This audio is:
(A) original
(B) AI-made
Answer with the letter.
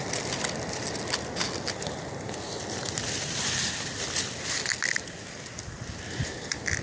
A